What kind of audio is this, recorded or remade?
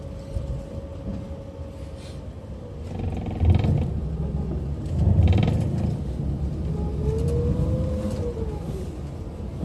recorded